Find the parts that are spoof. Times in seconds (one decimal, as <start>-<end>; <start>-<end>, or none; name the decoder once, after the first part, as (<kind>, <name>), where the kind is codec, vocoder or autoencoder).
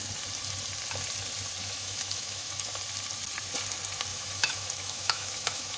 1.6-2.7 (autoencoder, DAC-VAE); 4.1-5.8